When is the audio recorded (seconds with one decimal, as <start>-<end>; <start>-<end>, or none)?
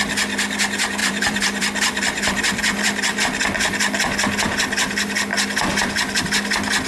0.0-1.0; 3.2-5.3; 6.2-6.9